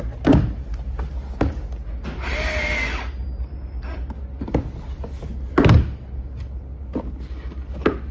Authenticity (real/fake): real